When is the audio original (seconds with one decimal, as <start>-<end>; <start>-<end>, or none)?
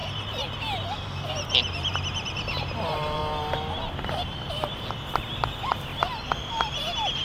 3.2-4.9; 5.9-6.5